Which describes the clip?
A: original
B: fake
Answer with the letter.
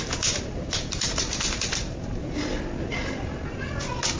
B